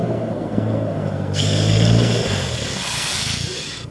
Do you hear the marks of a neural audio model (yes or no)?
yes